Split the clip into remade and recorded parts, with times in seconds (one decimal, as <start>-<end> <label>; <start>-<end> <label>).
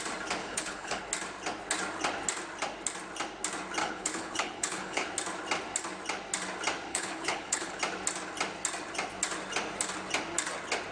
0.0-0.4 recorded; 0.4-1.0 remade; 1.0-3.8 recorded; 3.8-5.1 remade; 5.1-6.9 recorded; 6.9-7.8 remade; 7.8-10.9 recorded